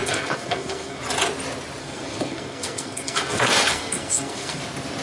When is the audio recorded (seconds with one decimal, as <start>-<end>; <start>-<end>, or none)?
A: 1.0-1.8; 4.6-5.0